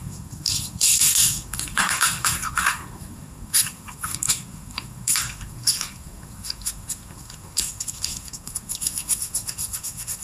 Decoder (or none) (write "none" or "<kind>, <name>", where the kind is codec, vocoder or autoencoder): codec, SNAC